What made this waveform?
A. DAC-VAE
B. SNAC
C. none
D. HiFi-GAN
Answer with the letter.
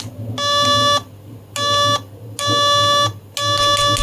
C